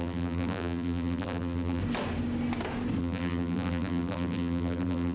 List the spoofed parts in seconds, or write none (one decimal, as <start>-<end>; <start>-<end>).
0.0-1.8; 3.0-5.1